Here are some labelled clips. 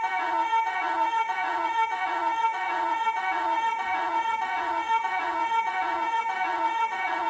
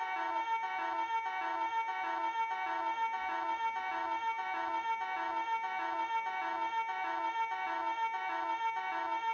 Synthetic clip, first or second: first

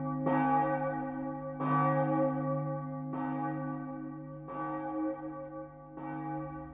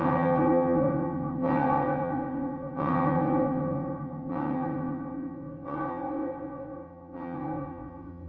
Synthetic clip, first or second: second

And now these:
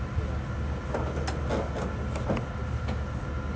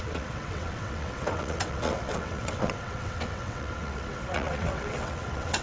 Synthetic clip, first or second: second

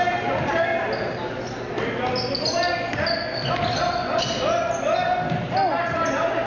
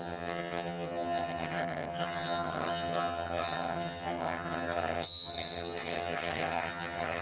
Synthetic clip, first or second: second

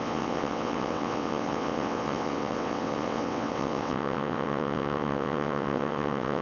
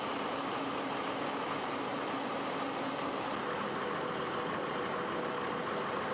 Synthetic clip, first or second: first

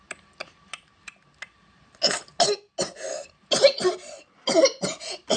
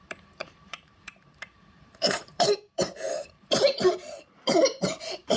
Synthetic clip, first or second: second